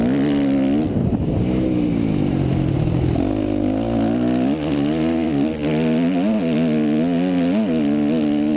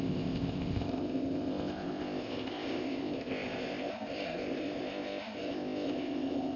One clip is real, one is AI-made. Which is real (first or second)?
first